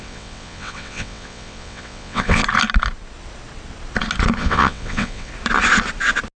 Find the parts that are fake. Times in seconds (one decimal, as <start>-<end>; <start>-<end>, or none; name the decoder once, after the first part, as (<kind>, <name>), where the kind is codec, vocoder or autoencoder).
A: 0.0-2.4 (vocoder, WaveNeXt); 4.4-5.3